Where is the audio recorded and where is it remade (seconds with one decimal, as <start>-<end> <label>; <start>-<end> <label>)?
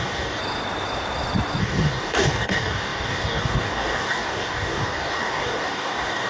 0.0-0.4 remade; 0.4-1.6 recorded; 1.6-6.3 remade